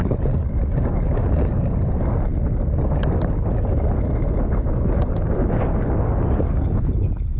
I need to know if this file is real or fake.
real